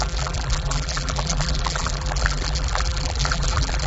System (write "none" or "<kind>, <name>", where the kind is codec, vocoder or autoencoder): vocoder, BigVGAN v2